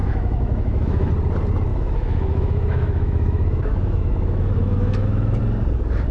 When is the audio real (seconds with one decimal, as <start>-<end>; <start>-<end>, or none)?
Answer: 1.1-1.7; 5.4-6.1